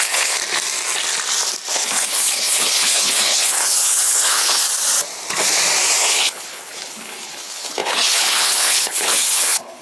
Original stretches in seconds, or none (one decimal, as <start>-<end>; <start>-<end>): 0.4-1.7; 4.6-6.0